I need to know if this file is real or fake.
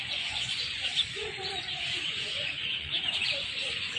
fake